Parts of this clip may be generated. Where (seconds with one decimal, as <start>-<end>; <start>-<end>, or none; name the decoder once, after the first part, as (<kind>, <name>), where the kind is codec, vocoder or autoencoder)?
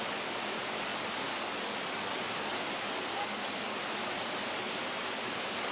none